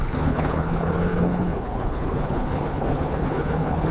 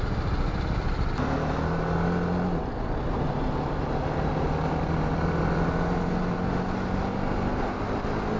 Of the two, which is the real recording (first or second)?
second